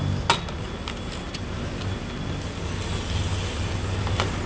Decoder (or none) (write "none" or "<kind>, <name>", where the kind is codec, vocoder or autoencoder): none